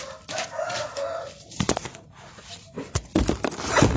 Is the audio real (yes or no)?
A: yes